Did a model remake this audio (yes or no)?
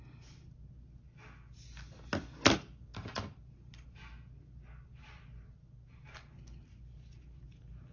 no